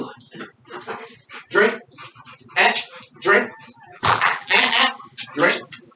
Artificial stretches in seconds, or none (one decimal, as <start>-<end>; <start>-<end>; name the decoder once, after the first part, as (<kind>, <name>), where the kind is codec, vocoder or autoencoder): 3.9-4.8 (vocoder, BigVGAN v2)